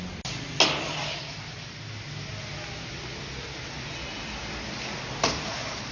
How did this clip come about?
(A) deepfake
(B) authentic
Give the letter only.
B